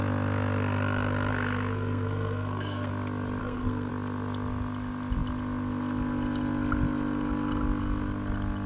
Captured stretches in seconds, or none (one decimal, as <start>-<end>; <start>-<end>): 0.0-1.3; 2.9-3.4; 3.9-8.7